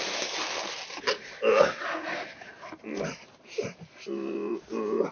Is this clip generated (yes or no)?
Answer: no